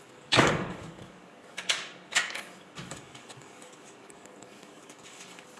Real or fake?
fake